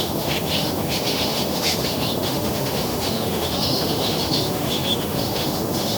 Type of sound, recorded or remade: remade